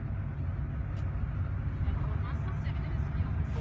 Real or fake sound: real